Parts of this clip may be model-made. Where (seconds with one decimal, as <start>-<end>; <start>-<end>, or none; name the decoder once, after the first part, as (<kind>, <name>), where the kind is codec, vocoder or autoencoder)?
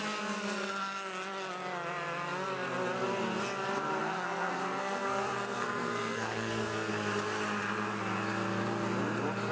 4.0-6.9 (codec, SNAC)